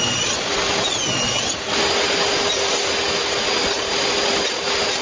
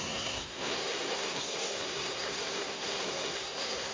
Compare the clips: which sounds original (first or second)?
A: first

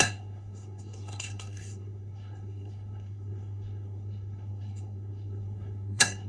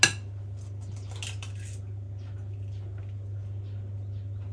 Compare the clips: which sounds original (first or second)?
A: second